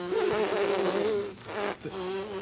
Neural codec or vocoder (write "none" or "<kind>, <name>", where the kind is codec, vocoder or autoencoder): none